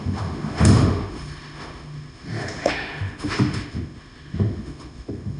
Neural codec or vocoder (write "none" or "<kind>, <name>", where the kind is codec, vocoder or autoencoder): autoencoder, DAC-VAE